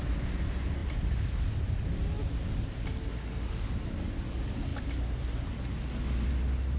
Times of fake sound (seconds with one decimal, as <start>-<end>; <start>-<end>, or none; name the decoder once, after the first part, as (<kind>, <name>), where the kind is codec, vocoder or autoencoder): none